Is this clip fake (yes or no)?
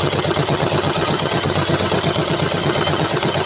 yes